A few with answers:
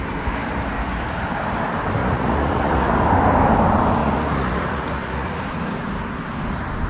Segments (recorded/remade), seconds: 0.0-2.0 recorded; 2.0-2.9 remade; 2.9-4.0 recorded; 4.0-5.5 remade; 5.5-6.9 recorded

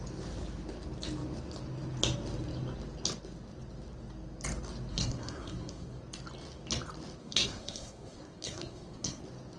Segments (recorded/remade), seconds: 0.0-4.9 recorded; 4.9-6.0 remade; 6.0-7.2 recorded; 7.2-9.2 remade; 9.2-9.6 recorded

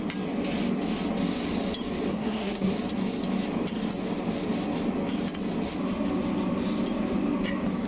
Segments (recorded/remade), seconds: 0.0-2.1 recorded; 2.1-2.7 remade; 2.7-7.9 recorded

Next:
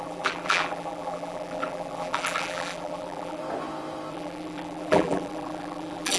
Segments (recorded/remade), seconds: 0.0-3.4 remade; 3.4-4.1 recorded; 4.1-6.2 remade

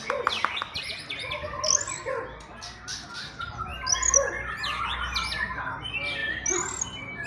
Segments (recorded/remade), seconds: 0.0-7.3 recorded

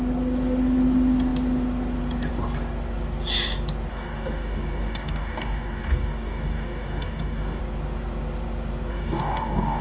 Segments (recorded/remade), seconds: 0.0-3.9 recorded; 3.9-7.6 remade; 7.6-8.9 recorded; 8.9-9.8 remade

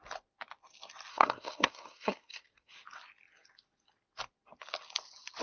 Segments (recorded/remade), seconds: 0.0-1.1 recorded; 1.1-2.7 remade; 2.7-5.4 recorded

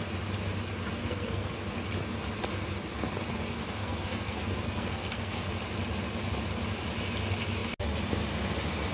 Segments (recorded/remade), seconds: 0.0-1.0 recorded; 1.0-1.5 remade; 1.5-3.8 recorded; 3.8-5.5 remade; 5.5-8.9 recorded